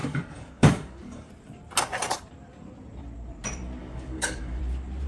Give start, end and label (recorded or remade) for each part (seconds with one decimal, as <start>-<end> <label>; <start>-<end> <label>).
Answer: 0.0-1.3 remade; 1.3-3.8 recorded; 3.8-4.6 remade; 4.6-5.1 recorded